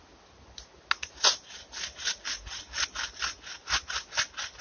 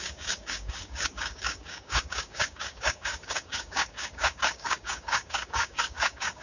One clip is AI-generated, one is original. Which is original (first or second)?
first